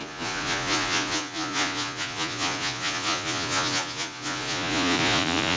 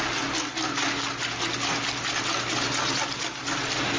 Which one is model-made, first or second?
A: first